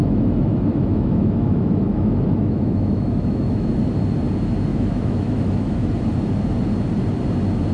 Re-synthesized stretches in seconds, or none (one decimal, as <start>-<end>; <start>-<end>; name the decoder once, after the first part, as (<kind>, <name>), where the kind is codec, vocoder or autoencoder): 0.0-3.7 (autoencoder, DAC-VAE); 4.7-5.9